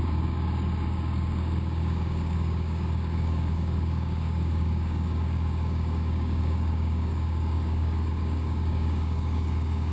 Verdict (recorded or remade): remade